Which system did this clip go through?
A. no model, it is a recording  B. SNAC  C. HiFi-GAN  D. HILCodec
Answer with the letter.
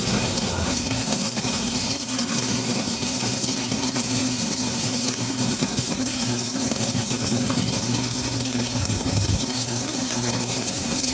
B